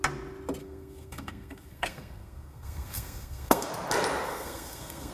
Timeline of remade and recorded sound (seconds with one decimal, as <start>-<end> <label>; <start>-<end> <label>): 0.0-0.6 recorded; 0.6-3.7 remade; 3.7-4.3 recorded; 4.3-5.1 remade